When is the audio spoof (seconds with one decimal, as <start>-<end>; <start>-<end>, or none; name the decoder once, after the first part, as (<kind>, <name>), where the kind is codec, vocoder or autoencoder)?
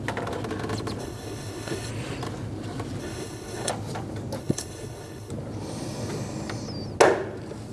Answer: 1.0-1.9 (codec, HILCodec); 3.0-3.7; 4.4-5.3